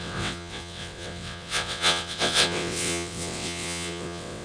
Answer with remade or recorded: remade